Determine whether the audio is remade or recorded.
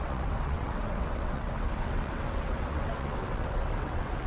remade